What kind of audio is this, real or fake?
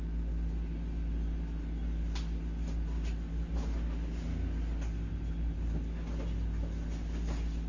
real